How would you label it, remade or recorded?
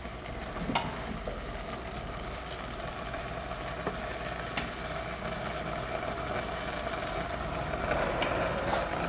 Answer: recorded